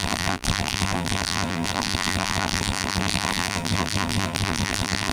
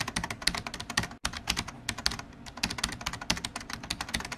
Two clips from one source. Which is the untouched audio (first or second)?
second